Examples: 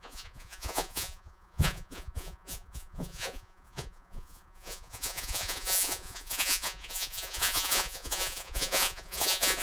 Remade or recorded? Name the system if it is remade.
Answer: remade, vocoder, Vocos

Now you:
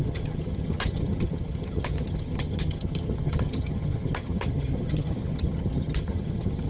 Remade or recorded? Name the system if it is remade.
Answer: remade, vocoder, HiFi-GAN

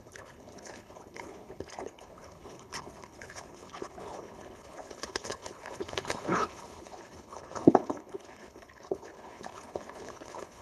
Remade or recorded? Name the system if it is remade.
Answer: remade, codec, HILCodec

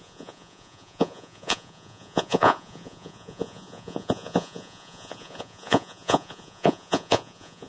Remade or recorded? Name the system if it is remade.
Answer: remade, vocoder, Vocos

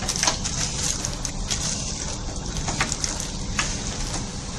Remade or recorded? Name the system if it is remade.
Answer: recorded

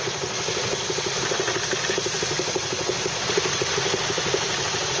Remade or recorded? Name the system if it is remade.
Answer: recorded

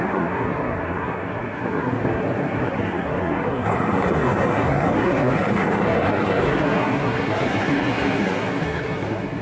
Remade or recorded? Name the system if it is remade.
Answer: remade, codec, SNAC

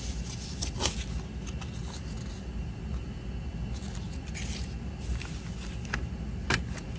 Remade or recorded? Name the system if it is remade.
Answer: recorded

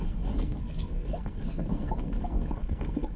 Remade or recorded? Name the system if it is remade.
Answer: remade, codec, SNAC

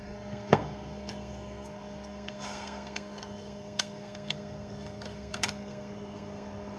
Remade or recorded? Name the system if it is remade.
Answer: remade, codec, SNAC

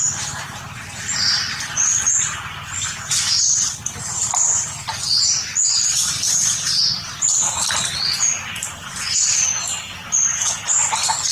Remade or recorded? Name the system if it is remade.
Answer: recorded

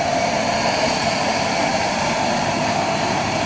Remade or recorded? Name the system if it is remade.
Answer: remade, vocoder, BigVGAN v2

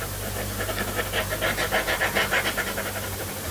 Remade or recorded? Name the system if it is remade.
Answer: recorded